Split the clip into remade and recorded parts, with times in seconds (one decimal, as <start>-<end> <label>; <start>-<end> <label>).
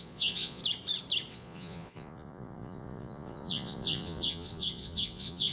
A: 0.0-0.6 remade; 0.6-1.3 recorded; 1.3-5.5 remade